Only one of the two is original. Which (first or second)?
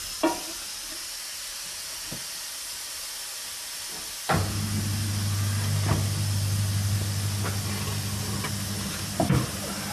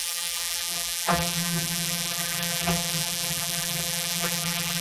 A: first